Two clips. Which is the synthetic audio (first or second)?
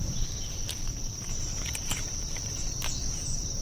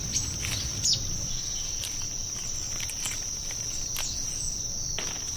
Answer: first